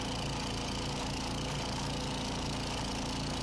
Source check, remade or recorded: recorded